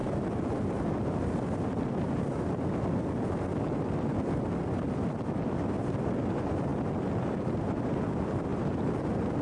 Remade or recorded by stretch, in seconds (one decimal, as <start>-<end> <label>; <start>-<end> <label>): 0.0-9.4 recorded